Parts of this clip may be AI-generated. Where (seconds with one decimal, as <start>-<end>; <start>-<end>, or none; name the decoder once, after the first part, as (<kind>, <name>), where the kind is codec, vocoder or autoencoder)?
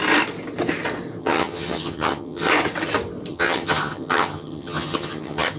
1.2-2.5 (vocoder, HiFi-GAN); 3.3-5.6